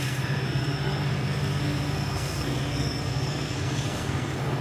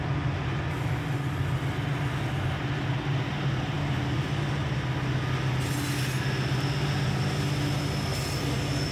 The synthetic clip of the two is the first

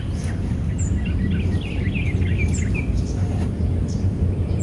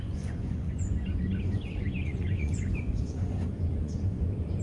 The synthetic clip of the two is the second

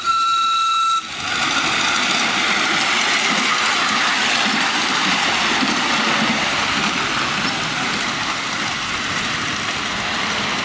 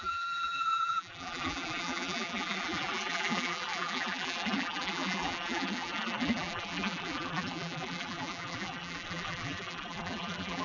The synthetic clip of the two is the second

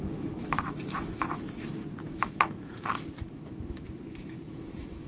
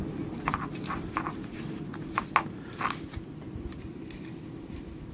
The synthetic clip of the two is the first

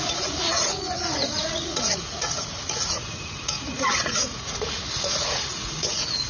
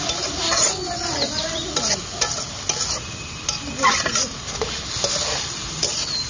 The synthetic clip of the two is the first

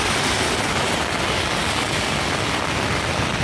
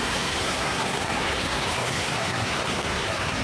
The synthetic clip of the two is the second